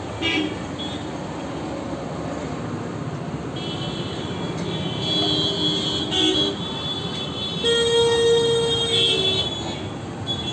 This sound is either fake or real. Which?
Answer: real